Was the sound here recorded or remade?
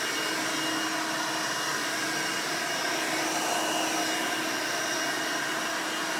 recorded